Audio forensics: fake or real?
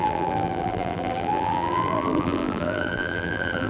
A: fake